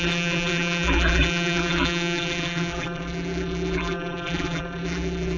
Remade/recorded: remade